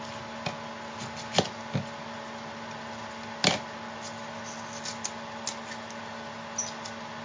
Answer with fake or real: real